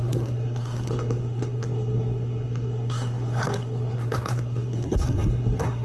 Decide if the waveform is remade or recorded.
remade